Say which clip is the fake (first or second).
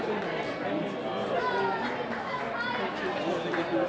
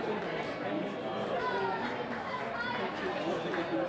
second